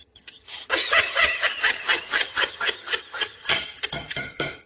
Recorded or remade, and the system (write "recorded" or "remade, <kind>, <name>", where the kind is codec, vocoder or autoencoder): remade, vocoder, HiFi-GAN